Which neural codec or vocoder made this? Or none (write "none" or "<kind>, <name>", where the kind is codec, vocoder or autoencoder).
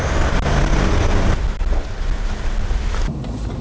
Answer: none